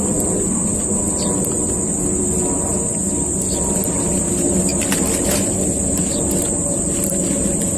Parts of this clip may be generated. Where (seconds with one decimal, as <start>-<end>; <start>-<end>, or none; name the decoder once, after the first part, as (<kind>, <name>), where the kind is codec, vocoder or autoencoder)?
none